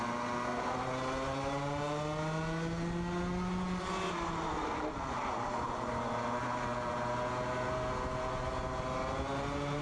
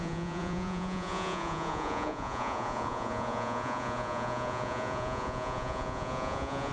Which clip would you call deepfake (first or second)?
second